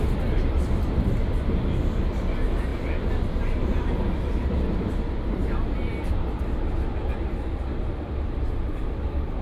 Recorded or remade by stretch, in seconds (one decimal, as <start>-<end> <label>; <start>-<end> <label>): 0.0-9.4 recorded

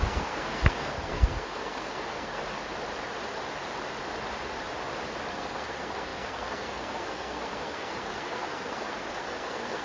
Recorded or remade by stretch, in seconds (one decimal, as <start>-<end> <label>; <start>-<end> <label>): 0.0-2.4 remade; 2.4-5.3 recorded; 5.3-9.8 remade